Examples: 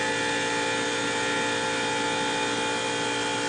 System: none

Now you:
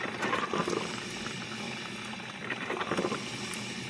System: vocoder, BigVGAN v2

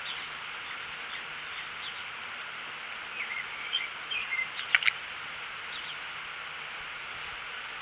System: none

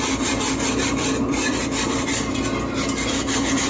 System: vocoder, BigVGAN v2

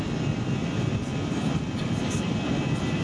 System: vocoder, BigVGAN v2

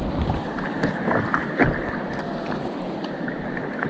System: none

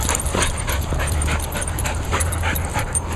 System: vocoder, BigVGAN v2